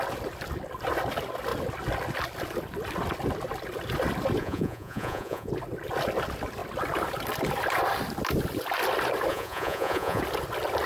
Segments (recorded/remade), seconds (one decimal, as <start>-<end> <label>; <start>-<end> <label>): 0.0-4.4 recorded; 4.4-5.5 remade; 5.5-9.3 recorded; 9.3-10.2 remade; 10.2-10.9 recorded